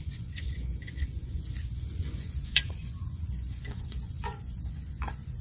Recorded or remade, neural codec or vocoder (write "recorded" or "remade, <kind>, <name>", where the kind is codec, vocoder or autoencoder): remade, vocoder, Vocos